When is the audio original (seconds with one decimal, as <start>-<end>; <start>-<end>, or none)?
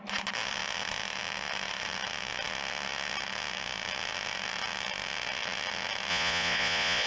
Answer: 0.0-6.1